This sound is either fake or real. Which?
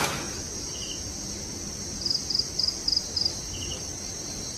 fake